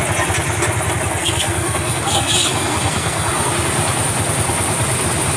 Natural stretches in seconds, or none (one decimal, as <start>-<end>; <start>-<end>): 0.0-1.2; 3.5-5.4